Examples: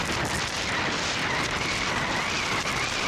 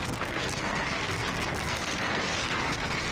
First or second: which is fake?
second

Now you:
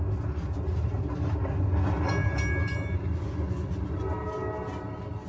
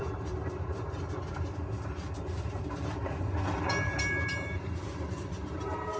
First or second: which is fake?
second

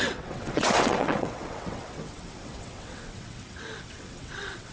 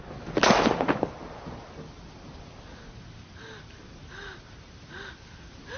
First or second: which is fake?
first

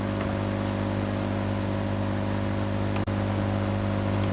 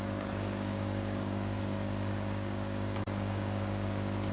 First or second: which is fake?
second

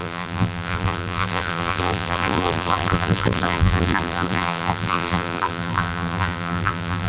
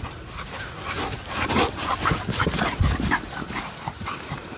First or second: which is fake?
first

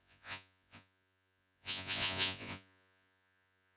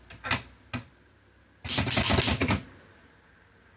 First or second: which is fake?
first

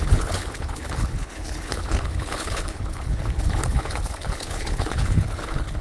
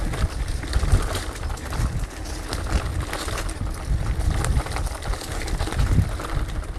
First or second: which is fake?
first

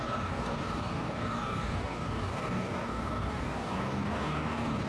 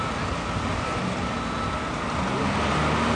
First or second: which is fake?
first